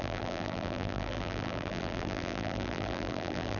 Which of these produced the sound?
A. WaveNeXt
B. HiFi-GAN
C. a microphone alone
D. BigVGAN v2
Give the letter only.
D